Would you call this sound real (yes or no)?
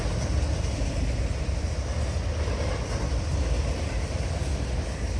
yes